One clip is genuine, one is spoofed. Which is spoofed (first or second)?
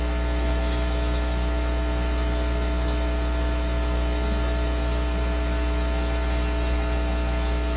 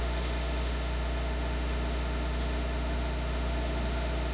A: second